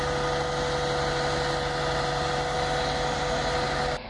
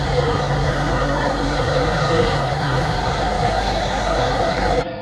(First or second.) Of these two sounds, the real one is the first